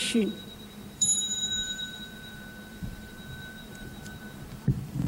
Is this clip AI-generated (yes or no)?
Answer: yes